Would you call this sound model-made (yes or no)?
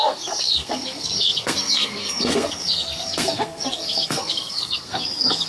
yes